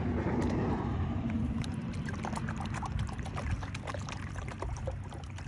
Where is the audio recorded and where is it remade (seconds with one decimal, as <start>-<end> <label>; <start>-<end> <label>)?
0.0-1.8 remade; 1.8-3.9 recorded; 3.9-5.5 remade